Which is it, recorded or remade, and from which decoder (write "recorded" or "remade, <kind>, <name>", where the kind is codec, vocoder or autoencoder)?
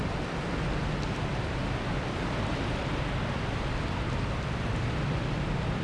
recorded